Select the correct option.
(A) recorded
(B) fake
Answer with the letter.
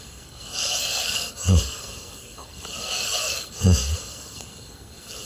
B